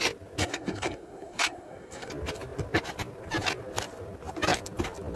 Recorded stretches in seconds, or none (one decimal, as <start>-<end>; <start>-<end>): 0.0-0.4; 2.1-5.2

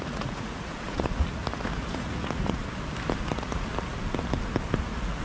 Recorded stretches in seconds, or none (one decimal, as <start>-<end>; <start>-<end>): 2.6-3.2; 3.7-4.8

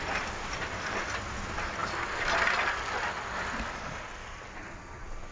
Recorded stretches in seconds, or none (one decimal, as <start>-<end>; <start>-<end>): 0.0-5.3

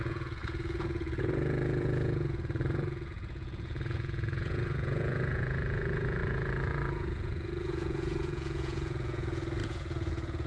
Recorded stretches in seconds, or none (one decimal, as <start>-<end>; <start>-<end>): none

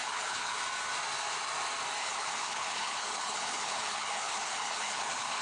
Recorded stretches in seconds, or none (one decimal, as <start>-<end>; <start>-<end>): 0.6-2.0

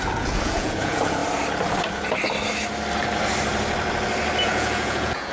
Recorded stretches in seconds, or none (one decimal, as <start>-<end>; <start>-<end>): 1.2-4.4

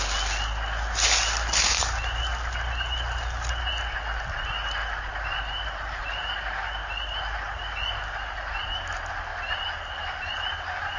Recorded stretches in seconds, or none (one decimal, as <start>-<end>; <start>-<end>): 0.0-4.8; 8.6-9.3

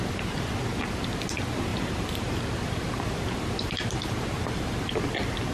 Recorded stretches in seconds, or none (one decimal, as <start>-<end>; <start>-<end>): 0.0-1.7; 5.0-5.5